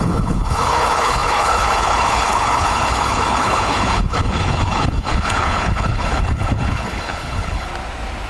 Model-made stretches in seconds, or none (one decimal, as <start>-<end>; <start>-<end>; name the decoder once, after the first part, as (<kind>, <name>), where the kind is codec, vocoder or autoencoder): 0.0-7.7 (codec, HILCodec)